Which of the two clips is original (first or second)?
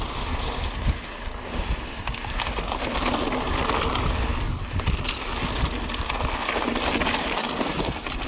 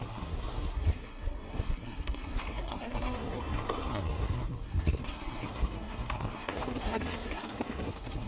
first